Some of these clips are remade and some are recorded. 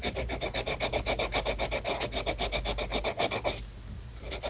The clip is recorded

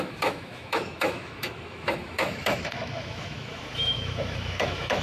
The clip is remade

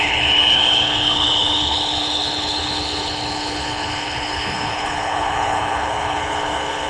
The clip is remade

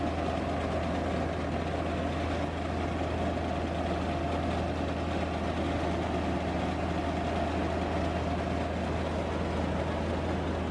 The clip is recorded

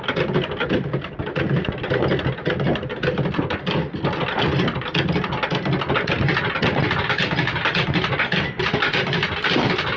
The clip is recorded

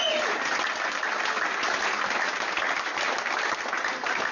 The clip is recorded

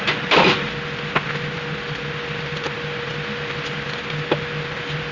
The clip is recorded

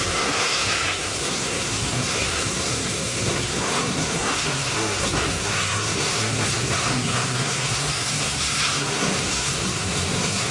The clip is remade